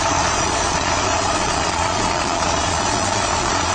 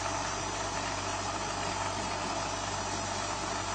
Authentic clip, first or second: second